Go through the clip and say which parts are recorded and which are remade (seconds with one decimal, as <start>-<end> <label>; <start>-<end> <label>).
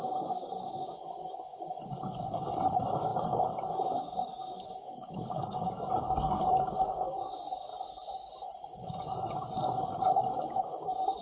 0.0-7.7 remade; 7.7-8.6 recorded; 8.6-11.2 remade